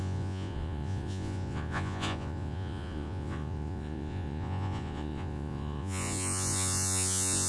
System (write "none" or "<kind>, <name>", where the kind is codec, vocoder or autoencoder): vocoder, Vocos